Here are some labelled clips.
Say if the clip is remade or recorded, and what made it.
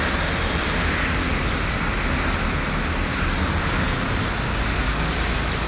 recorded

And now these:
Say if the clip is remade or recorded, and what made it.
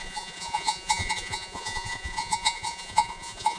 remade, vocoder, Vocos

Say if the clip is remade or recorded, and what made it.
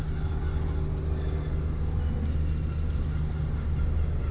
recorded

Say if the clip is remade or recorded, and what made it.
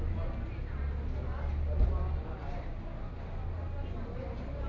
recorded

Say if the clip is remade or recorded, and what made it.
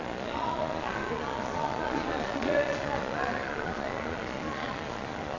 remade, vocoder, Vocos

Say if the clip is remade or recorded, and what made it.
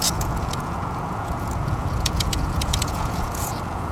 remade, vocoder, Vocos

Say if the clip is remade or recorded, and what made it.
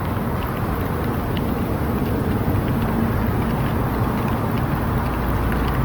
recorded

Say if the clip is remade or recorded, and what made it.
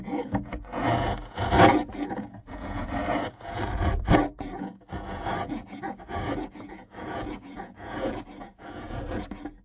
remade, vocoder, Vocos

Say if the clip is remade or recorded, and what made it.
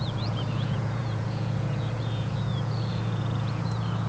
remade, vocoder, Vocos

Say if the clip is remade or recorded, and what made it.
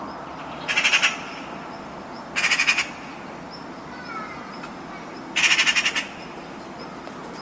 recorded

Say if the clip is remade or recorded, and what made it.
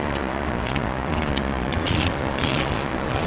remade, vocoder, Vocos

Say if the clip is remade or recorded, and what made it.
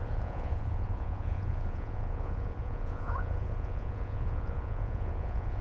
remade, vocoder, Vocos